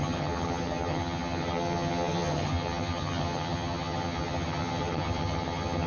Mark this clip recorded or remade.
remade